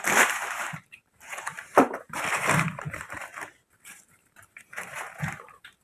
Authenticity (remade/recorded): remade